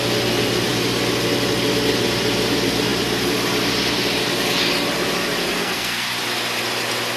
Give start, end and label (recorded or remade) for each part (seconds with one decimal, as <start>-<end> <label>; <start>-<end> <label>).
0.0-5.6 recorded; 5.6-6.1 remade; 6.1-7.2 recorded